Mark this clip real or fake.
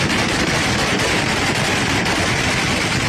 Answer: real